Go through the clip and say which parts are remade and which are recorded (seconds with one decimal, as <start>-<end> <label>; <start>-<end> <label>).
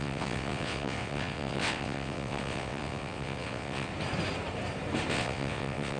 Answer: 0.0-3.9 remade; 3.9-5.1 recorded; 5.1-6.0 remade